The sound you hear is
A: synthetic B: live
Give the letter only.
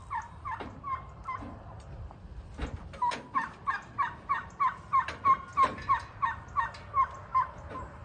B